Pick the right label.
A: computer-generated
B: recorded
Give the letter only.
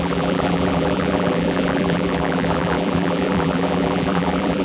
A